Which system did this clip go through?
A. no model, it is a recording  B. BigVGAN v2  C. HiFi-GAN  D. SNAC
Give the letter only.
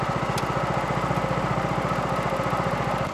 A